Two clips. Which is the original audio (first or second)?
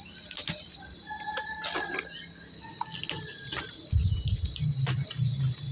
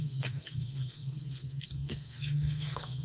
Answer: first